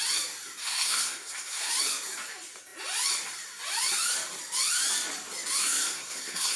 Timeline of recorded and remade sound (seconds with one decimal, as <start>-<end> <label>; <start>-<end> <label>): 0.0-0.6 recorded; 0.6-1.7 remade; 1.7-5.6 recorded; 5.6-6.6 remade